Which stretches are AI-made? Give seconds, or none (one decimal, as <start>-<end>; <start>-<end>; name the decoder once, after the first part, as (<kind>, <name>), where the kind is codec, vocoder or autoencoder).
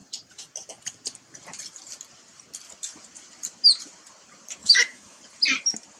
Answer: 4.6-5.2 (autoencoder, DAC-VAE)